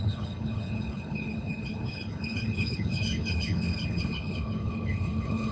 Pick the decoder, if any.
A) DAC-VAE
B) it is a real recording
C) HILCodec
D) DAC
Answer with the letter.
C